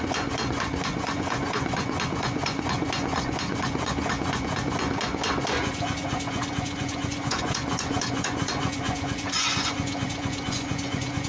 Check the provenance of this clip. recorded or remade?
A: remade